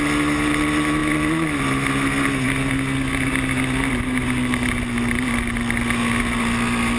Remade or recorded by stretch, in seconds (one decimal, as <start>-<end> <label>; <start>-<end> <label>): 0.0-7.0 recorded